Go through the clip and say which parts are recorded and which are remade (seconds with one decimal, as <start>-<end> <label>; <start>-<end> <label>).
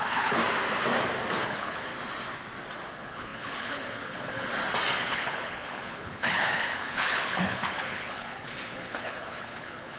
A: 0.0-0.4 remade; 0.4-1.4 recorded; 1.4-1.9 remade; 1.9-2.9 recorded; 2.9-4.5 remade; 4.5-5.0 recorded; 5.0-10.0 remade